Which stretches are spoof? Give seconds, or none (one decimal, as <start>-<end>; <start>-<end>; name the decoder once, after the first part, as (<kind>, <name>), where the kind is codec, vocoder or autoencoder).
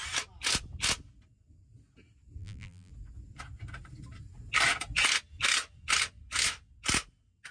2.4-2.9 (vocoder, BigVGAN v2)